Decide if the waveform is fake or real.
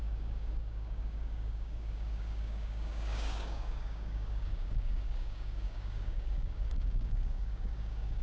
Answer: fake